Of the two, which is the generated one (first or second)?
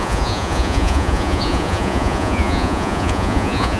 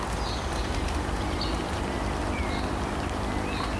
first